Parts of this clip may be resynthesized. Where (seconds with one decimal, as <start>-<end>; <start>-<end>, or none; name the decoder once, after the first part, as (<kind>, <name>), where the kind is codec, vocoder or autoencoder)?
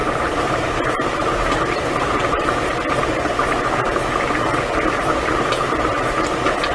0.0-2.7 (vocoder, BigVGAN v2)